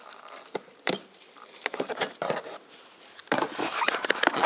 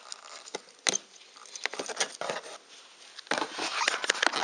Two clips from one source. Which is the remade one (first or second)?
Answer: first